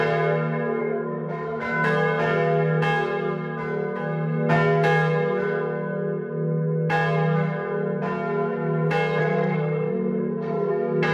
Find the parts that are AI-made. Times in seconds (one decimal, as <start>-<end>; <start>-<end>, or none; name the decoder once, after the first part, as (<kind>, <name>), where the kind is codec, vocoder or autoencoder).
0.8-1.6 (codec, SNAC); 9.2-10.7